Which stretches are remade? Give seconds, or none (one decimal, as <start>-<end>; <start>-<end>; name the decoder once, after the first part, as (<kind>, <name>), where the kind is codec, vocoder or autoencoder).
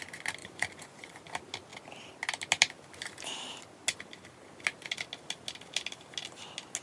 0.4-1.2 (vocoder, Vocos)